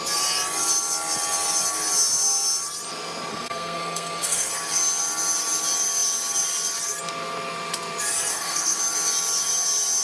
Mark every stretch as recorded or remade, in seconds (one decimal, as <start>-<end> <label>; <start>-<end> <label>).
0.0-3.3 recorded; 3.3-4.5 remade; 4.5-8.3 recorded; 8.3-8.8 remade; 8.8-10.0 recorded